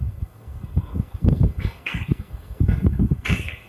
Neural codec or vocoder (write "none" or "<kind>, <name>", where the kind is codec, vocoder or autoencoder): codec, SNAC